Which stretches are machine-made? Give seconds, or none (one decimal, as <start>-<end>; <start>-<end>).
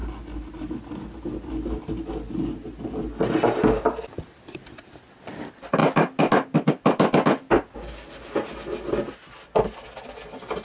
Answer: none